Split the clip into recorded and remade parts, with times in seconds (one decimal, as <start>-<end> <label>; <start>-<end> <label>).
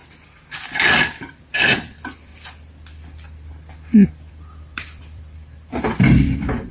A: 0.0-1.5 recorded; 1.5-2.3 remade; 2.3-4.3 recorded; 4.3-6.7 remade